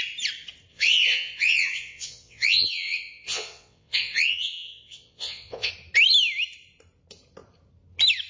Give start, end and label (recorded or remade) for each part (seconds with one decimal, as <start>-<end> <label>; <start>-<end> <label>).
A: 0.0-0.7 recorded; 0.7-5.7 remade; 5.7-8.3 recorded